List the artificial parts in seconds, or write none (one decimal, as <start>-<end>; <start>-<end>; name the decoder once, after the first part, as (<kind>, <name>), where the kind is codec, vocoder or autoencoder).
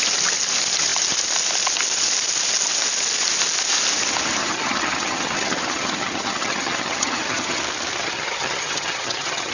4.4-7.6 (vocoder, HiFi-GAN); 8.0-9.5